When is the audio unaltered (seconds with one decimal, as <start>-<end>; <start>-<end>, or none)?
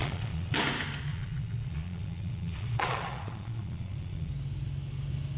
0.6-1.1; 4.3-5.4